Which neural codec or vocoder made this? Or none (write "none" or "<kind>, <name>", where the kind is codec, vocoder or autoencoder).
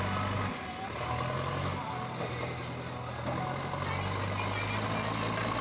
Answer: none